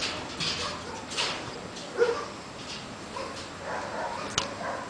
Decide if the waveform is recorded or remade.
recorded